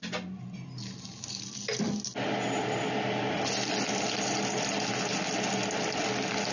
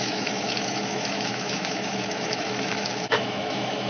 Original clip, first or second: first